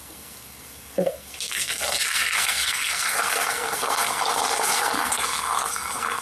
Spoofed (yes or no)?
yes